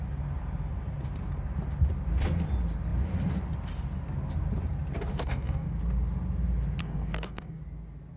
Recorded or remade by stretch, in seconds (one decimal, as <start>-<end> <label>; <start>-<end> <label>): 0.0-5.1 recorded; 5.1-5.7 remade; 5.7-6.8 recorded; 6.8-7.6 remade; 7.6-8.2 recorded